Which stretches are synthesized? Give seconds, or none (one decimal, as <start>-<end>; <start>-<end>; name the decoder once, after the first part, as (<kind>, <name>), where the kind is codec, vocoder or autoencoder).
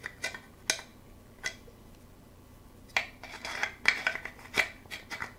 none